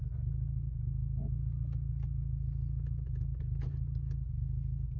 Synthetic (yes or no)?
no